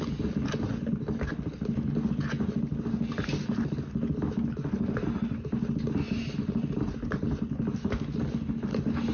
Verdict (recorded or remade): recorded